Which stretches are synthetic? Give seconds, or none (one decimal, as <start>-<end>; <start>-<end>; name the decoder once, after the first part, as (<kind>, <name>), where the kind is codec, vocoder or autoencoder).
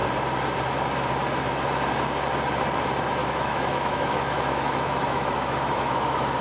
3.2-6.4 (autoencoder, DAC-VAE)